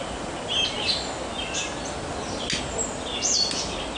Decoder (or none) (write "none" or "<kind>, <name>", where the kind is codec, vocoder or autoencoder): none